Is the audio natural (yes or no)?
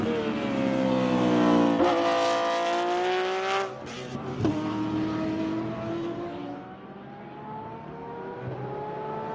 yes